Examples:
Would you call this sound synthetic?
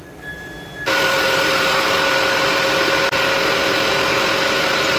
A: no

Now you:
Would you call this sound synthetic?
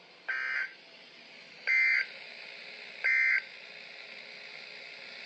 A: no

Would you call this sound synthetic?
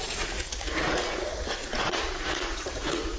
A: yes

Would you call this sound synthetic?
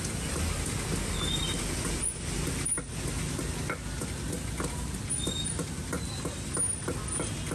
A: no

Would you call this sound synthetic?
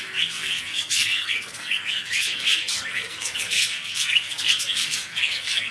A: yes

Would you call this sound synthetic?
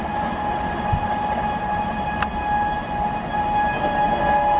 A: no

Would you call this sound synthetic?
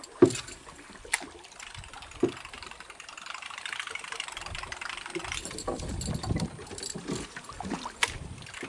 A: no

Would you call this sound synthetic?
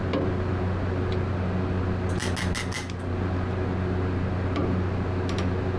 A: no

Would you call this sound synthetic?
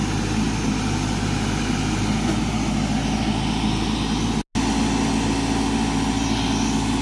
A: no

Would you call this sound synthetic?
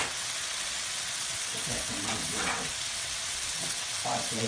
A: yes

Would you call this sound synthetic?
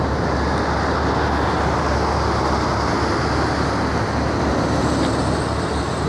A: no